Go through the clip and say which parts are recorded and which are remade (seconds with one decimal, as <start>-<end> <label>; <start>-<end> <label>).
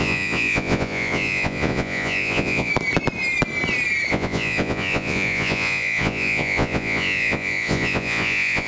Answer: 0.0-2.7 remade; 2.7-4.1 recorded; 4.1-8.7 remade